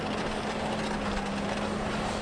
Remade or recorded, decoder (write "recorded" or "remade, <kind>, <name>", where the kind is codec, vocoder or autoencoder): recorded